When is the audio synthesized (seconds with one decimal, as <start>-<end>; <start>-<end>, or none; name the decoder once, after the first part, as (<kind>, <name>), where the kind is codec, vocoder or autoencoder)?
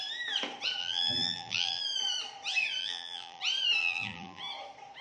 0.8-1.8 (vocoder, BigVGAN v2); 2.8-3.4; 3.8-4.4